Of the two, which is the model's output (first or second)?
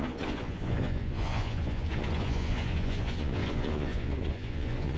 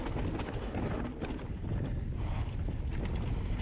first